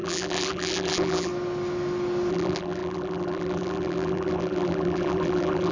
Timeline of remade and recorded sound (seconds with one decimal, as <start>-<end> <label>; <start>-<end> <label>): 0.0-1.3 remade; 1.3-2.3 recorded; 2.3-5.7 remade